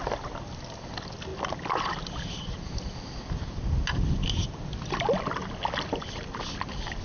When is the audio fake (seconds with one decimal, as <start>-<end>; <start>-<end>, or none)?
none